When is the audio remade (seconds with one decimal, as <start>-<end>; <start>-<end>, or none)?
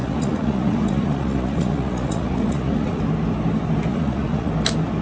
0.0-3.0; 3.9-4.5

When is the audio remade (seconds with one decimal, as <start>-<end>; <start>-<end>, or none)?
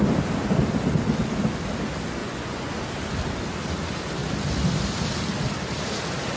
2.2-2.7